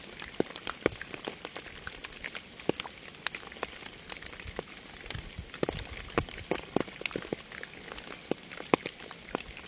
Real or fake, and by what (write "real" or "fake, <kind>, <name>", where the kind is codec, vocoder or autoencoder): real